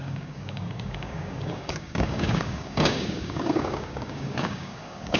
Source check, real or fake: fake